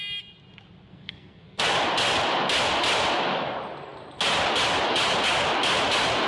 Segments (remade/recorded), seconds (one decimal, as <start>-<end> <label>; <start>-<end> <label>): 0.0-0.9 recorded; 0.9-1.6 remade; 1.6-6.3 recorded